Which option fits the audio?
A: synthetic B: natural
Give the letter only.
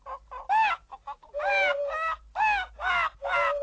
B